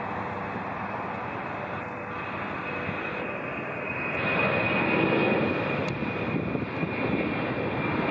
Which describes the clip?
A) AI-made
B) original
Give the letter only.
B